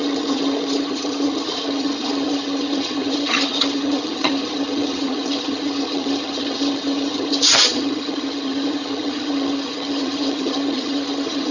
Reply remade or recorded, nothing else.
remade